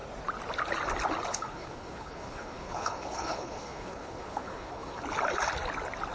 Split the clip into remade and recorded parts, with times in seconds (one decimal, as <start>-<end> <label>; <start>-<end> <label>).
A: 0.0-1.3 recorded; 1.3-5.0 remade; 5.0-6.1 recorded